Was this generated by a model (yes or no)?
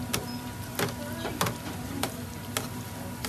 no